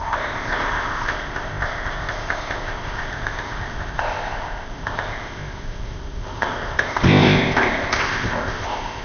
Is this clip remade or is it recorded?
remade